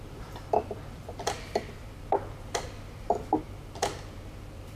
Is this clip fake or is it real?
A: fake